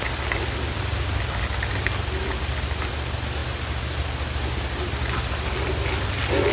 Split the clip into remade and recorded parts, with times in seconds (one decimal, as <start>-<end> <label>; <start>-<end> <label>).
0.0-6.5 recorded